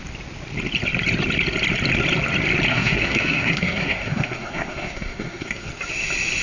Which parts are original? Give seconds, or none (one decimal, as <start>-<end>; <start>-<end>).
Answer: 0.0-2.7; 5.7-6.4

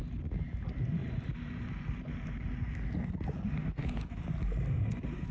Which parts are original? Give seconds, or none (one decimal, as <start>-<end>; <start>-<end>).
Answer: 0.0-5.3

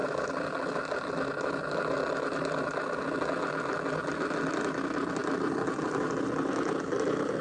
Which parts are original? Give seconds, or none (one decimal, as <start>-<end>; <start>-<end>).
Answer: 0.0-7.4

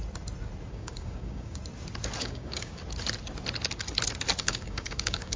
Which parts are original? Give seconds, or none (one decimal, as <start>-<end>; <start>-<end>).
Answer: 0.0-0.7; 1.6-2.2; 2.8-4.4

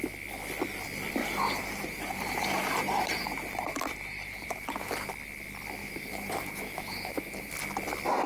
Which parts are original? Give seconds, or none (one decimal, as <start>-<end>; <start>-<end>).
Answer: 0.0-1.2; 4.9-5.8; 7.5-8.3

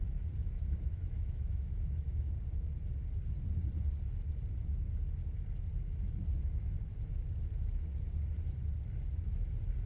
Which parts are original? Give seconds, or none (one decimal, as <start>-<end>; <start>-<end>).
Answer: 0.0-0.4; 2.3-9.9